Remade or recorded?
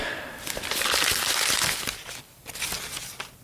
recorded